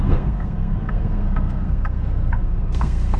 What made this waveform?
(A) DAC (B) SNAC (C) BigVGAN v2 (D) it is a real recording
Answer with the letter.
B